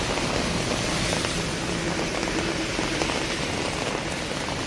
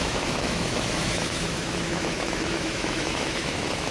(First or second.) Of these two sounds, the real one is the first